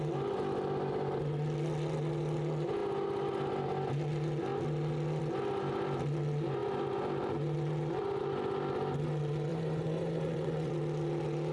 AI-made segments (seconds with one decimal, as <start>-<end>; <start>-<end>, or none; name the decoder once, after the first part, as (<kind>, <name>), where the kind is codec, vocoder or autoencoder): 9.5-10.7 (vocoder, Vocos)